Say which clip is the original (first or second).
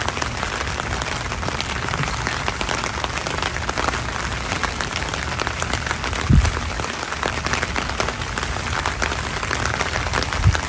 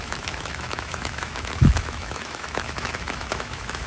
first